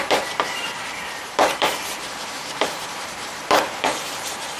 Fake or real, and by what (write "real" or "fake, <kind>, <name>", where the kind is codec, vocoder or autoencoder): fake, vocoder, BigVGAN v2